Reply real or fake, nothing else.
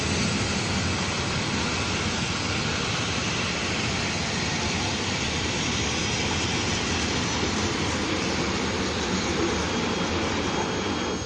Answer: real